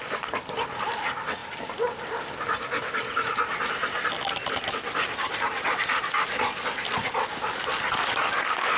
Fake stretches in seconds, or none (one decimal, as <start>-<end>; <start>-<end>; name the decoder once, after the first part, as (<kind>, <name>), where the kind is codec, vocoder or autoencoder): none